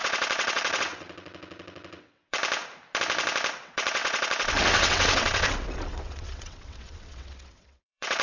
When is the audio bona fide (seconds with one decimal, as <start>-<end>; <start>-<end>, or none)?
2.4-3.5

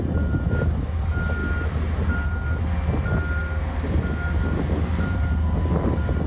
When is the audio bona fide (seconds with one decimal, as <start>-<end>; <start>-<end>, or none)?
0.0-6.3

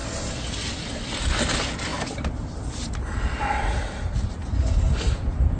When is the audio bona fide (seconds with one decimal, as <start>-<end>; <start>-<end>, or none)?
0.0-5.6

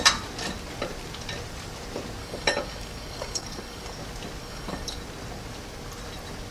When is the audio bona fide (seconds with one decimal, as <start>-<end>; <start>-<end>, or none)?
0.0-2.2; 3.9-4.4; 5.0-6.5

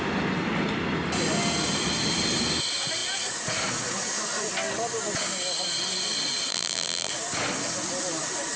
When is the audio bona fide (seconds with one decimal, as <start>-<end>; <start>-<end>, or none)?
0.0-6.5; 7.1-8.6

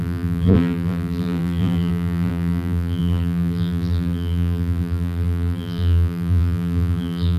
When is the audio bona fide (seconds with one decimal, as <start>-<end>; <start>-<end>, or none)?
none

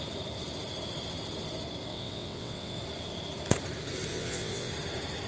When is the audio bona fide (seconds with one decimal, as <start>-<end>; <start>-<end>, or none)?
0.0-1.9; 2.8-4.1; 4.7-5.3